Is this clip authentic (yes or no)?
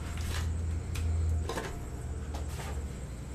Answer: yes